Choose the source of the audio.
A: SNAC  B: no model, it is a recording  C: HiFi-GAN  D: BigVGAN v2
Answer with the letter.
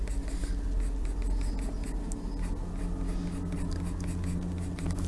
B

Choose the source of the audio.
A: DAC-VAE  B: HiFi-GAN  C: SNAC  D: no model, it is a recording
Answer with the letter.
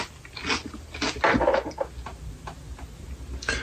D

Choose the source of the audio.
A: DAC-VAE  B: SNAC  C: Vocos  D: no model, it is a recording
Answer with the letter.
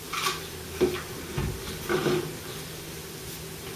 D